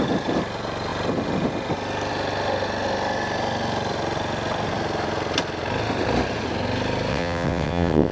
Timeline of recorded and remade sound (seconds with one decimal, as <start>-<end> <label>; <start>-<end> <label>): 0.0-7.1 recorded; 7.1-8.1 remade